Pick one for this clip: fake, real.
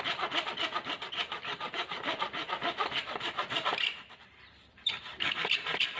real